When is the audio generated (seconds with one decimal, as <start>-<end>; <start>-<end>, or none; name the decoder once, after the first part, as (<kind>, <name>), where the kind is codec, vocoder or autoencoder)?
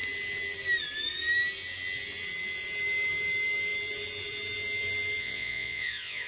5.2-6.3 (vocoder, Vocos)